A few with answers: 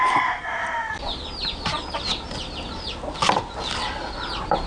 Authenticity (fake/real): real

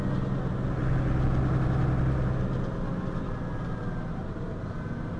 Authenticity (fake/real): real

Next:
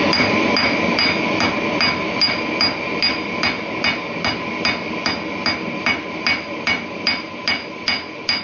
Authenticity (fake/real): real